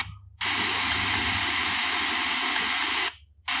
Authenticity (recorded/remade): recorded